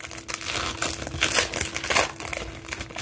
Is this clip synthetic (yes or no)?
no